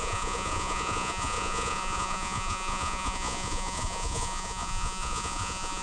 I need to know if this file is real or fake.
fake